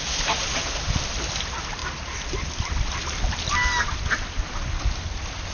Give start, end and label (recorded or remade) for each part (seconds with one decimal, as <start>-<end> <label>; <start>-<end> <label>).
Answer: 0.0-5.5 recorded